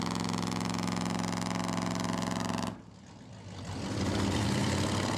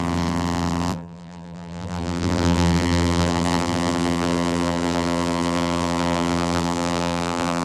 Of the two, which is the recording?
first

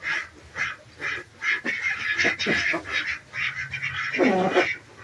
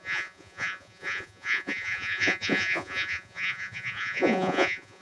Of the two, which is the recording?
first